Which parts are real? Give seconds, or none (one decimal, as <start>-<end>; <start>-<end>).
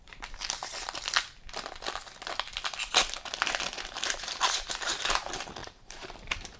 0.6-3.7